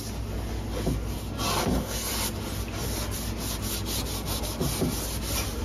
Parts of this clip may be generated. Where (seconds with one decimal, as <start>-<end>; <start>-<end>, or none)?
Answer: 1.6-2.1